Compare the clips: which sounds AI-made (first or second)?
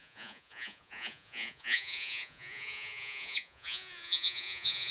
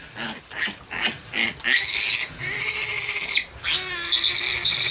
first